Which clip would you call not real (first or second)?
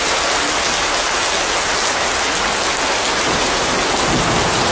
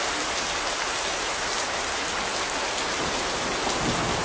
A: second